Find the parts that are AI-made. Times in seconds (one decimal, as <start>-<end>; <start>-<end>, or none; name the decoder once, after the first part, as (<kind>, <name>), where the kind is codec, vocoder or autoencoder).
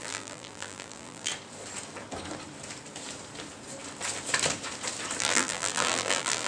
0.0-1.3 (vocoder, BigVGAN v2); 5.2-6.5